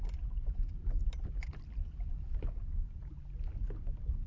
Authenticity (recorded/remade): recorded